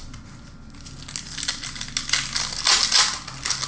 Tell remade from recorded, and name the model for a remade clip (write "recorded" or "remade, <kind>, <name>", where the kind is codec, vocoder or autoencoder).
recorded